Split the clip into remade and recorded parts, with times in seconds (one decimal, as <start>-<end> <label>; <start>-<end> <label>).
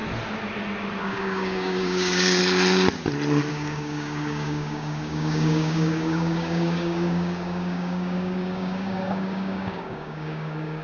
0.0-1.0 recorded; 1.0-2.4 remade; 2.4-3.5 recorded; 3.5-10.8 remade